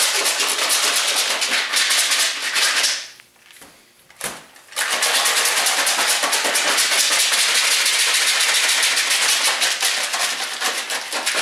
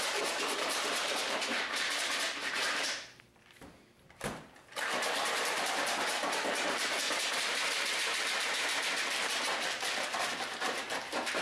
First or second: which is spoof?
second